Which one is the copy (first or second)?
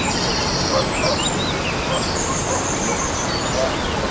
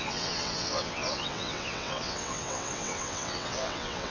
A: second